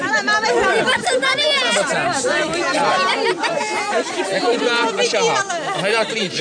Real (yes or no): yes